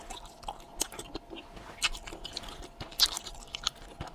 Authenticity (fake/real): real